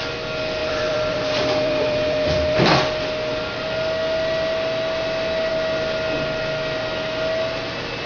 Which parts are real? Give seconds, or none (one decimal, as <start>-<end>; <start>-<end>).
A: 0.0-0.6; 2.6-8.1